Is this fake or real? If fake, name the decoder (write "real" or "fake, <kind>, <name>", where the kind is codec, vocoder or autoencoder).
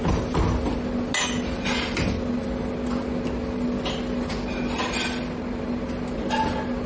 real